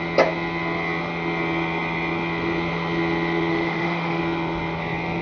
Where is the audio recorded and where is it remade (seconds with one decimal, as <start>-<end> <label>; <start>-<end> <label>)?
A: 0.0-3.5 recorded; 3.5-4.2 remade; 4.2-5.2 recorded